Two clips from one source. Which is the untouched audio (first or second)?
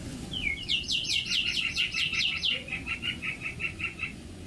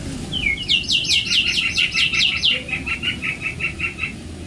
second